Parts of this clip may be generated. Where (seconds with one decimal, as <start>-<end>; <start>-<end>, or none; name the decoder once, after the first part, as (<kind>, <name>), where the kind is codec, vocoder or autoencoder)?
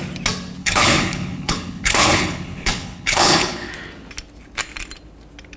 0.6-3.7 (codec, HILCodec)